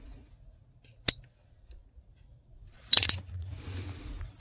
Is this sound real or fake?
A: fake